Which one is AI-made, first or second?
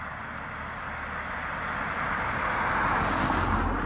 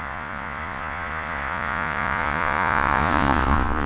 second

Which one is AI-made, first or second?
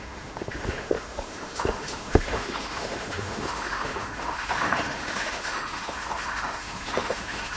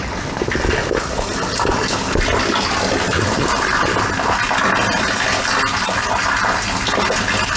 first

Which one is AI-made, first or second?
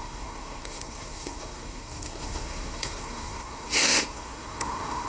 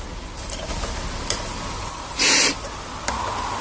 first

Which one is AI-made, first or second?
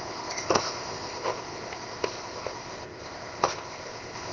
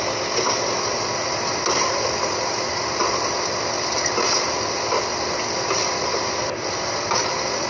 first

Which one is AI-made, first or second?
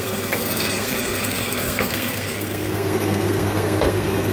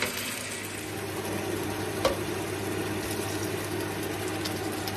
first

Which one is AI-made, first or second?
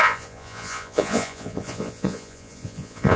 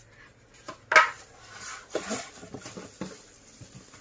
first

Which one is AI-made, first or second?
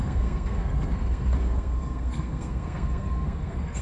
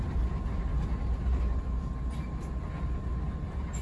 first